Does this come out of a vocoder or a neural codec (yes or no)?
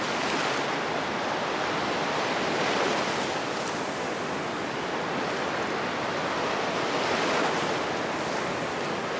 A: no